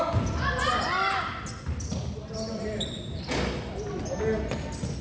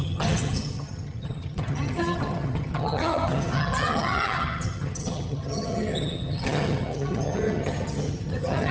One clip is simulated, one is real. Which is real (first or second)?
first